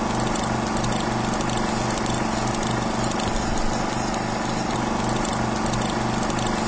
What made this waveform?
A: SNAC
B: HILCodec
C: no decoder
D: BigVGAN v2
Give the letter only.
C